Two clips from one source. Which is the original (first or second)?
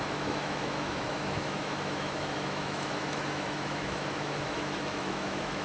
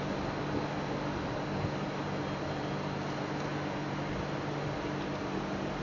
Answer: second